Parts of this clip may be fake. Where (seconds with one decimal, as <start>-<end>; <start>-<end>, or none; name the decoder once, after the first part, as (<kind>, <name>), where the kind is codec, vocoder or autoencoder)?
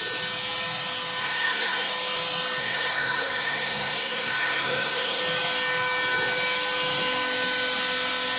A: 1.2-1.9 (codec, SNAC); 2.6-5.2